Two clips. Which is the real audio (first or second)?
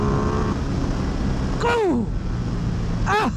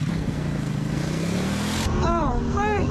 first